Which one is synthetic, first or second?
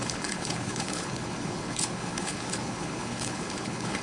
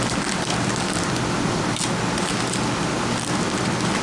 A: first